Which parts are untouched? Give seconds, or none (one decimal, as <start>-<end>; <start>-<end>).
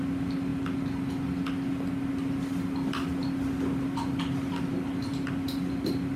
0.0-6.2